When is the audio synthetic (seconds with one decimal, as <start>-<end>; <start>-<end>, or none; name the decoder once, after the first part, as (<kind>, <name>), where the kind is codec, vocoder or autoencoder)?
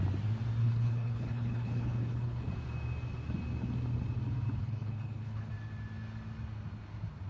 0.6-2.5 (codec, HILCodec); 4.6-5.5